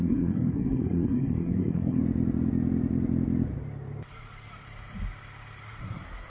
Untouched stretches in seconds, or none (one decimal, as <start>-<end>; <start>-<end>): 2.0-5.8